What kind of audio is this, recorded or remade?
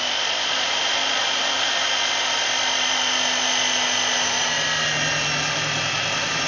recorded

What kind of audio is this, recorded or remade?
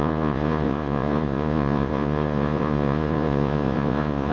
remade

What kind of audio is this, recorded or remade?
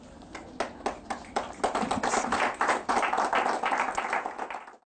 recorded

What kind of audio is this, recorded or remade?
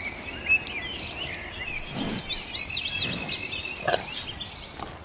recorded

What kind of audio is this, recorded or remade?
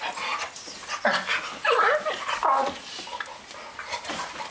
recorded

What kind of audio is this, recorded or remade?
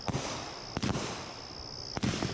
recorded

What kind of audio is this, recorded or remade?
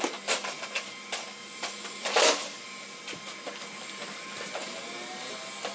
recorded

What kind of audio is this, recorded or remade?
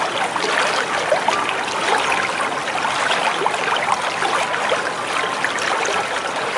recorded